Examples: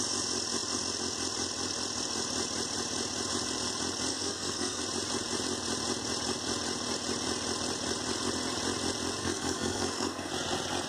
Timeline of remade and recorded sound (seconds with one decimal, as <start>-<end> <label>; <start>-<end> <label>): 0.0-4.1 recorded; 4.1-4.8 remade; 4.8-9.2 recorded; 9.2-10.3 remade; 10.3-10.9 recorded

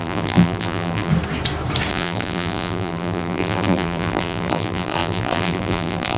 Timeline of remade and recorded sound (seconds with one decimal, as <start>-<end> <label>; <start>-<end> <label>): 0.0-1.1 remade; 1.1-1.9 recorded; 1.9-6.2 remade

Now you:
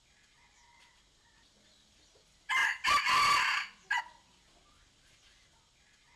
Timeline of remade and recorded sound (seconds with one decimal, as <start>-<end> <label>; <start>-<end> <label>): 0.0-6.2 recorded

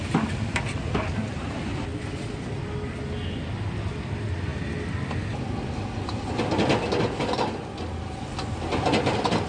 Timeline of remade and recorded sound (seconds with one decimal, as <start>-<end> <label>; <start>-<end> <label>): 0.0-9.5 recorded